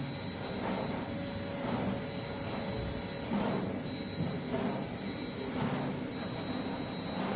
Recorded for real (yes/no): yes